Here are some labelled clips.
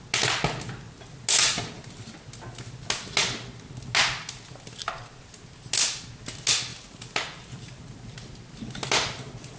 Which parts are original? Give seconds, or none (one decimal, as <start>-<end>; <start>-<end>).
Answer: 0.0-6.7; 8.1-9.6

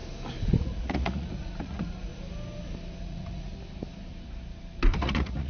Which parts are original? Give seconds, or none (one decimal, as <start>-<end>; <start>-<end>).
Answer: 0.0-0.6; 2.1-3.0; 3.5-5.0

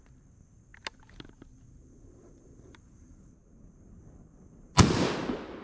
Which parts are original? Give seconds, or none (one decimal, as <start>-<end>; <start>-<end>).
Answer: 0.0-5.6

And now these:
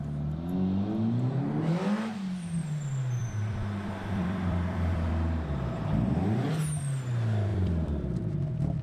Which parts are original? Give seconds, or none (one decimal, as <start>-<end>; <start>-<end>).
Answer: 0.0-3.2; 5.1-7.5; 8.2-8.8